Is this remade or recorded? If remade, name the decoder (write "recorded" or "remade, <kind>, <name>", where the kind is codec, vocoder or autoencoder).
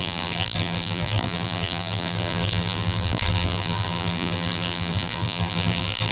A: remade, vocoder, BigVGAN v2